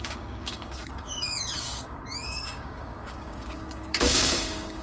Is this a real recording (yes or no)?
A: no